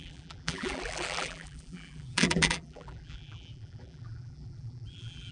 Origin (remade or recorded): remade